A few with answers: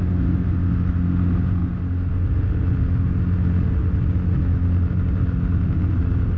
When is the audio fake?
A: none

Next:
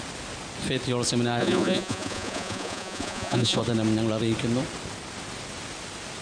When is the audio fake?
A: 1.4-3.6 (vocoder, Vocos)

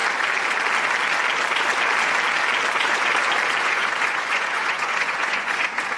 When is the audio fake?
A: 3.6-6.0 (vocoder, Vocos)

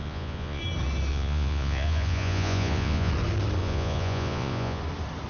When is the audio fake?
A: 0.0-0.6 (vocoder, Vocos); 1.1-3.1; 3.6-4.8

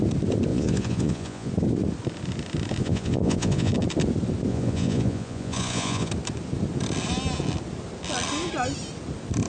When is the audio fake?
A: 0.5-1.5 (vocoder, Vocos); 2.8-3.7; 4.5-6.1